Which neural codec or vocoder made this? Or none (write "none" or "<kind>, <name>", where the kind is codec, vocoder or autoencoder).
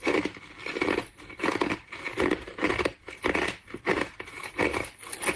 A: none